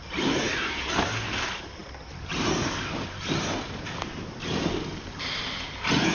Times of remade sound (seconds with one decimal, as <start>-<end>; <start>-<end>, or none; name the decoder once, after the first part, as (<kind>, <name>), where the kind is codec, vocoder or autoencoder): none

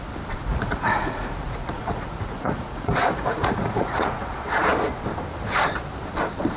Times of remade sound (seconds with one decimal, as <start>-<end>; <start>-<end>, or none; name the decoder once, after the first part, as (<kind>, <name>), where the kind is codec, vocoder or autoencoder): 0.4-4.4 (vocoder, Vocos)

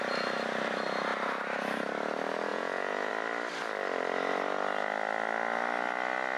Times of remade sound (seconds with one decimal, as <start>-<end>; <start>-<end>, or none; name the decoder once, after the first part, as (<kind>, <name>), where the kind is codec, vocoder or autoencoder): 2.5-3.1 (vocoder, Vocos)

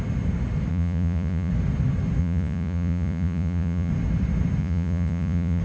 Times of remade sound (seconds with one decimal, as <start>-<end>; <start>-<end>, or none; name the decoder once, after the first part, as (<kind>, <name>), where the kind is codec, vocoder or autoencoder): 0.7-1.5 (vocoder, Vocos); 2.2-3.9; 4.6-5.6

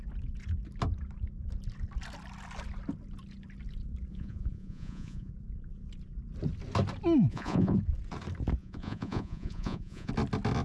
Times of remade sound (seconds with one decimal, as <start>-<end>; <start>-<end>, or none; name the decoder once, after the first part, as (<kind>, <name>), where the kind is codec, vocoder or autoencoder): 4.1-5.3 (vocoder, Vocos); 7.3-7.8; 8.6-10.1

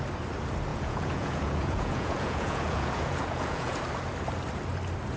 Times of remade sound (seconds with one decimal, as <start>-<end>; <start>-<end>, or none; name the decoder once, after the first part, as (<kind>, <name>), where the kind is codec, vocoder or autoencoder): 0.7-3.8 (vocoder, Vocos)

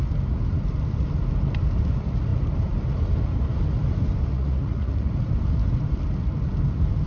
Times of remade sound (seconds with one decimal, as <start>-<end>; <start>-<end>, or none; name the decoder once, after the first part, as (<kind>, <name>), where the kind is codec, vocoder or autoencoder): 4.3-5.1 (vocoder, Vocos)

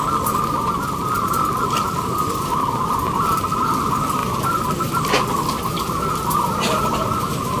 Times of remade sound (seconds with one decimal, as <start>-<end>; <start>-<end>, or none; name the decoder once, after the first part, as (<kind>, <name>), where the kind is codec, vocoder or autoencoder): none